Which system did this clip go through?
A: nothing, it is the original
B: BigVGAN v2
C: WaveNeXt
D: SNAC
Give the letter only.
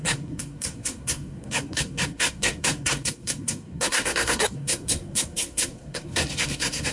D